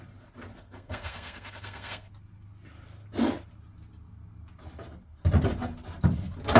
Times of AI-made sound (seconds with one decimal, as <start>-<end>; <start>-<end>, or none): 0.5-2.1